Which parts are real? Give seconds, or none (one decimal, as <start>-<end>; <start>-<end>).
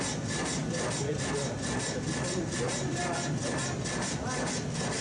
0.0-5.0